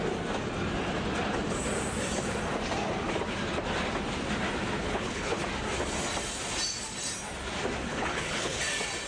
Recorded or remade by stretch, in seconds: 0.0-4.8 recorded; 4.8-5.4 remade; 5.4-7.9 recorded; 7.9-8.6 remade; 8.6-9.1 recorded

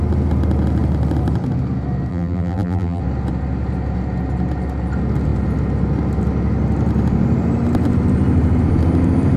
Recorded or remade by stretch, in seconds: 0.0-2.1 recorded; 2.1-3.0 remade; 3.0-9.4 recorded